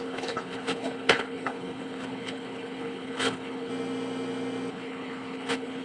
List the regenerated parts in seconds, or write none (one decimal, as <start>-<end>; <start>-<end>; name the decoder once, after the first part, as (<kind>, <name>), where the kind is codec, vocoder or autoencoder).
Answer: 0.0-3.7 (codec, HILCodec); 4.7-5.8